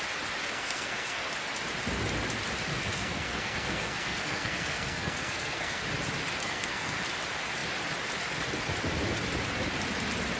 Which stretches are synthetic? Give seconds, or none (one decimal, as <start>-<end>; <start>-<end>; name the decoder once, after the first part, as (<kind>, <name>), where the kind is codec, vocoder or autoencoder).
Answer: 0.4-1.3 (codec, SNAC); 2.7-5.8; 6.4-7.0